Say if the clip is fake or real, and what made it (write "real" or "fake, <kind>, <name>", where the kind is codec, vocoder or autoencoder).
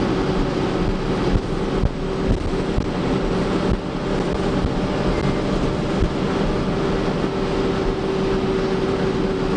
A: real